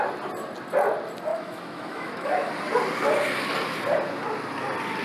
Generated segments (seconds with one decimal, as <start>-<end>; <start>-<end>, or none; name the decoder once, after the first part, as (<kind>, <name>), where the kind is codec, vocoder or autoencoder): 1.3-2.5 (autoencoder, DAC-VAE)